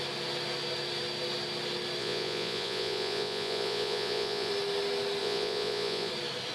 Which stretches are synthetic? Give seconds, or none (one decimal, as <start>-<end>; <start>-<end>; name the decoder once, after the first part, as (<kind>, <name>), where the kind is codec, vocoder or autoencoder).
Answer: 2.0-4.5 (vocoder, Vocos); 5.2-6.1